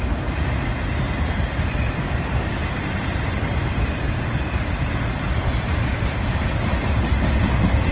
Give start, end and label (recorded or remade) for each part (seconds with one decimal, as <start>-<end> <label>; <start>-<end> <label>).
0.0-7.9 recorded